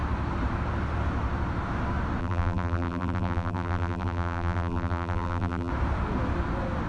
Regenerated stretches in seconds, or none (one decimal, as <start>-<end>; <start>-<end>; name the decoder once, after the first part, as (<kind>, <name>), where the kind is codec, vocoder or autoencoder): 2.2-5.7 (vocoder, BigVGAN v2)